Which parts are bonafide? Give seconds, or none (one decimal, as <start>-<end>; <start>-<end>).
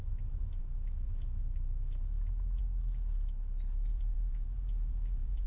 0.0-3.9